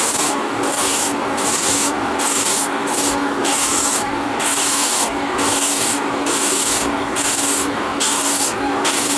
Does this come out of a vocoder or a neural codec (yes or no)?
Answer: yes